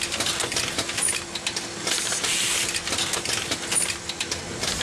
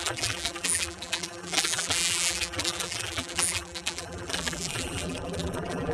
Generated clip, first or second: second